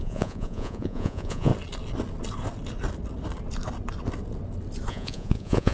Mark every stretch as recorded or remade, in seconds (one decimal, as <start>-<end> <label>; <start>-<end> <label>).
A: 0.0-1.5 remade; 1.5-4.9 recorded; 4.9-5.7 remade

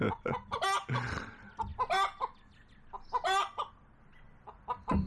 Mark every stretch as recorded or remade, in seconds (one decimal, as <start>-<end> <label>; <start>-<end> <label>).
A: 0.0-5.1 recorded

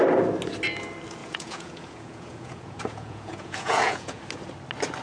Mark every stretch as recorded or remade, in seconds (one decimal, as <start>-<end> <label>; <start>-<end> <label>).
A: 0.0-1.2 recorded; 1.2-4.2 remade; 4.2-5.0 recorded

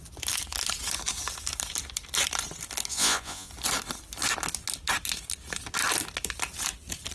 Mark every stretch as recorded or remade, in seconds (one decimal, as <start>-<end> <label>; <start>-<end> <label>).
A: 0.0-2.9 recorded; 2.9-3.5 remade; 3.5-7.1 recorded

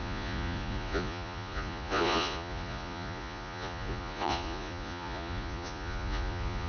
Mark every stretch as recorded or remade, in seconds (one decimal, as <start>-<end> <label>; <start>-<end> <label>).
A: 0.0-6.7 remade

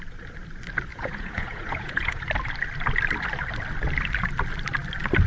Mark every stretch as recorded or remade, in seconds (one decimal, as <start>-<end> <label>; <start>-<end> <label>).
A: 0.0-0.9 recorded; 0.9-2.3 remade; 2.3-5.3 recorded

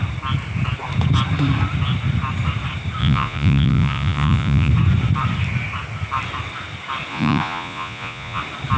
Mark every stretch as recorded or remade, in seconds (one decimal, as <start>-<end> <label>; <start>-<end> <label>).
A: 0.0-3.0 recorded; 3.0-4.7 remade; 4.7-7.1 recorded; 7.1-8.4 remade; 8.4-8.8 recorded

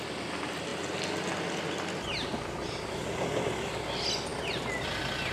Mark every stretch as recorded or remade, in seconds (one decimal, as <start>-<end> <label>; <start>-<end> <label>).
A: 0.0-5.3 recorded